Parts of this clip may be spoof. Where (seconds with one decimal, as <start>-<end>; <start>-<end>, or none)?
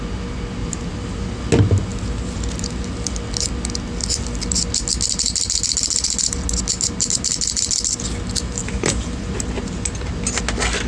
0.6-1.4; 1.9-2.8; 8.6-10.1